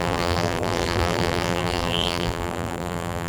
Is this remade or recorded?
remade